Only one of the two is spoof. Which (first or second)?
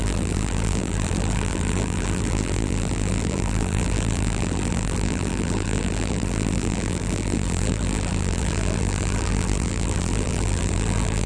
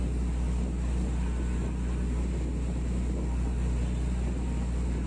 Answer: first